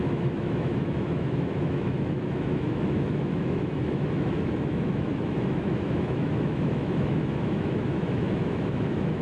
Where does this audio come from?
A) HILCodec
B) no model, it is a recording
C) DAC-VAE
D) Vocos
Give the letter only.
C